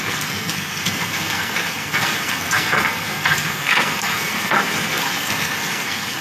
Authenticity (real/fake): fake